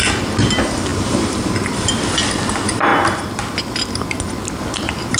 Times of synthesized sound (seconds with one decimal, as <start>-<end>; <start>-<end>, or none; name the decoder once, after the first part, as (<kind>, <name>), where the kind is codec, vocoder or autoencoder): 0.9-1.9 (vocoder, BigVGAN v2)